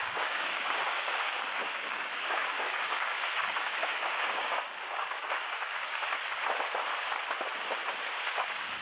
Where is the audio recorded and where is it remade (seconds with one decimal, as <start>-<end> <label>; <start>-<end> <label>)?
0.0-6.0 remade; 6.0-8.3 recorded; 8.3-8.8 remade